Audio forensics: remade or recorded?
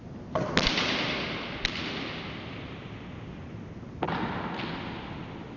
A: recorded